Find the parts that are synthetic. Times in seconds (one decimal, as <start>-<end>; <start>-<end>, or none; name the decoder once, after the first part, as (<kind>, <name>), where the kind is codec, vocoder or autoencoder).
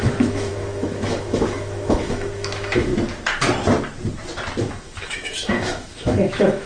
0.0-2.9 (autoencoder, DAC-VAE); 4.6-6.7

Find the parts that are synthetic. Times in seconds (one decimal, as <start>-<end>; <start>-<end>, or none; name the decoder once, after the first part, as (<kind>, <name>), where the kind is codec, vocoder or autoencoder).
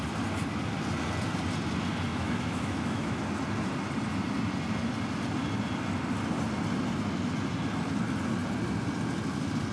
2.1-3.2 (autoencoder, DAC-VAE)